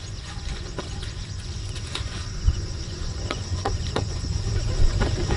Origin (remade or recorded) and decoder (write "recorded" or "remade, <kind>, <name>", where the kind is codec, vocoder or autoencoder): remade, vocoder, Vocos